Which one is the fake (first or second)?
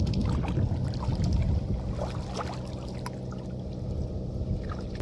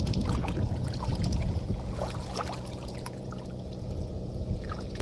second